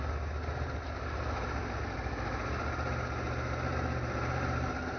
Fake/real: real